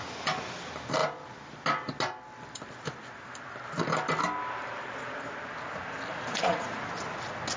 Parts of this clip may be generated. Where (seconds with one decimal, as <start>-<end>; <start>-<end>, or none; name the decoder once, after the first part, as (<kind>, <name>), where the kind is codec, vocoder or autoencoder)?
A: 6.1-6.8 (vocoder, Vocos)